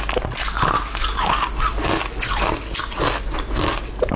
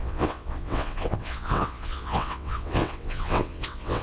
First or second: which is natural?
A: first